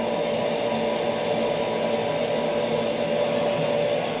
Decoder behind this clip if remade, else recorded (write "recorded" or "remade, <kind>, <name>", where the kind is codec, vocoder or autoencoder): recorded